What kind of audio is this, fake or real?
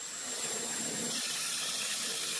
fake